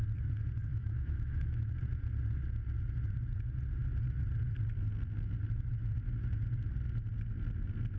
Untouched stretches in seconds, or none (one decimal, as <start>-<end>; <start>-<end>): 0.0-0.7; 1.7-8.0